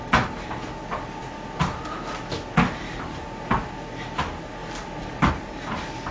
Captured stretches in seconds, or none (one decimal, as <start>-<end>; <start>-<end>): 0.0-1.2; 1.7-4.6; 5.3-6.1